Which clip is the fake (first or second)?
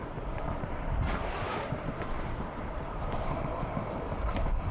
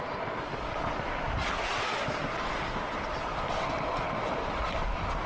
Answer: first